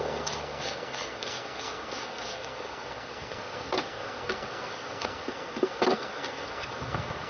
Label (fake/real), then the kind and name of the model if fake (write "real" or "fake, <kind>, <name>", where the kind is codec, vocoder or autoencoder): fake, codec, SNAC